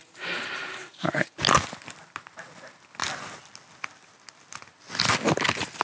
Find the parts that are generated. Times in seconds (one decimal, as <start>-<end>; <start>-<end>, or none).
none